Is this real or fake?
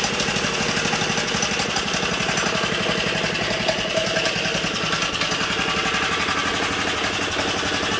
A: real